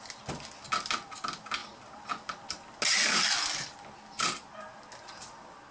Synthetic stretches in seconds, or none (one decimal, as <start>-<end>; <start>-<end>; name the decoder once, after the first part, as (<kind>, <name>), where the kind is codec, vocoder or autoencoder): none